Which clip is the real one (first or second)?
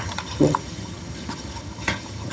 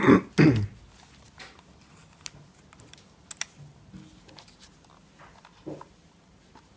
second